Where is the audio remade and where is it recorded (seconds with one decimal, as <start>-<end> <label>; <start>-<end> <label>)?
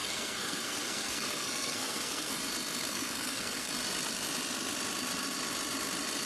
0.0-2.4 remade; 2.4-2.8 recorded; 2.8-3.7 remade; 3.7-6.2 recorded